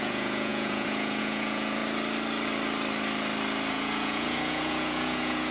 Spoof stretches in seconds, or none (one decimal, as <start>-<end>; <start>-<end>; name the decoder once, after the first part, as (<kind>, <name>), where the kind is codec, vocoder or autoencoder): 0.0-1.8 (vocoder, Vocos); 3.7-5.5